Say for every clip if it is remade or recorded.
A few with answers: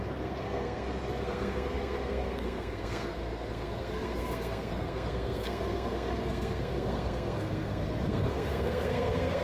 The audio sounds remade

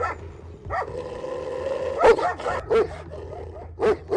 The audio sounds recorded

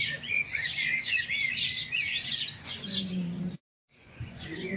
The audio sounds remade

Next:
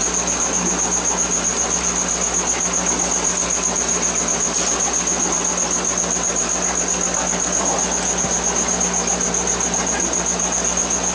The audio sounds recorded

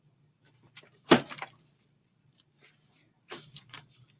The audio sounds remade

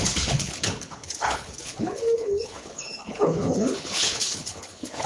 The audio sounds remade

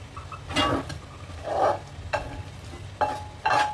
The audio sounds recorded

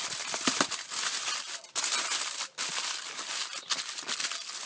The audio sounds recorded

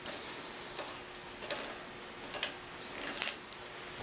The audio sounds recorded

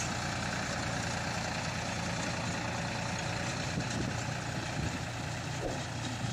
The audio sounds recorded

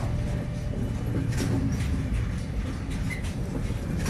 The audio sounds recorded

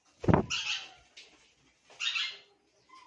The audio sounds recorded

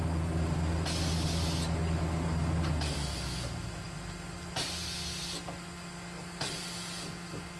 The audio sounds recorded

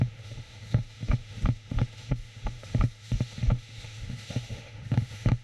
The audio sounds remade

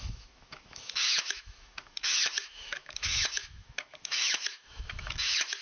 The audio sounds remade